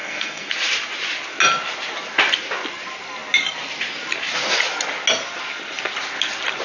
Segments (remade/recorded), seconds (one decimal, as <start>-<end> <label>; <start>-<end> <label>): 0.0-0.5 remade; 0.5-6.6 recorded